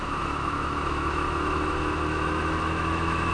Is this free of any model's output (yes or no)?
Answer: no